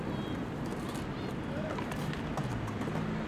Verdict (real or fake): real